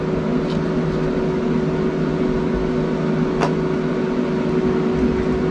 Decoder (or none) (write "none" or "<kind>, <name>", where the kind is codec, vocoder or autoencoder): none